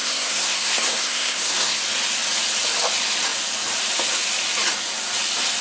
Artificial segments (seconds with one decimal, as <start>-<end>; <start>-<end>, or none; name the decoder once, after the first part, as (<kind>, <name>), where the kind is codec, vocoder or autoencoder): 0.0-1.8 (codec, SNAC)